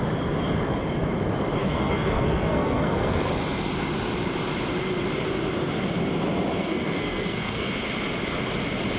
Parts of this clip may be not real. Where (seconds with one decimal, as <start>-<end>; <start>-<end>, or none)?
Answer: 1.6-3.3; 6.6-7.7